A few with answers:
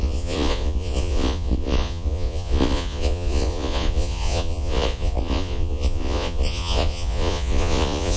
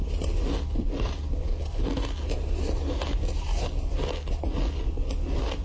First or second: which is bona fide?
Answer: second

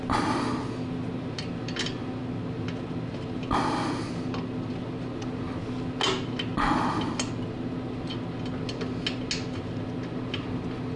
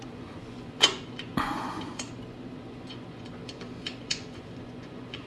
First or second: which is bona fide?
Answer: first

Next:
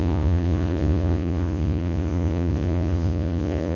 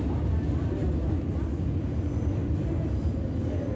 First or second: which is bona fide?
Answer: second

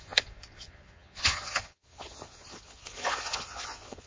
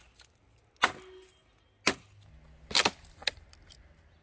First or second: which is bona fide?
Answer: second